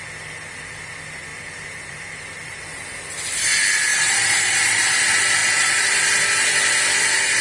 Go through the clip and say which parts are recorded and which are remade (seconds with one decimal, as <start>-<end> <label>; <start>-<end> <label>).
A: 0.0-1.3 recorded; 1.3-2.6 remade; 2.6-3.9 recorded; 3.9-4.8 remade; 4.8-5.4 recorded; 5.4-6.0 remade; 6.0-7.4 recorded